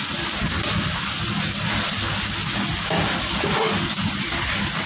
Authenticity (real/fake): real